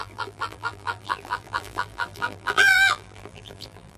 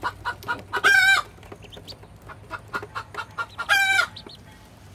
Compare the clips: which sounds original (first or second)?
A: second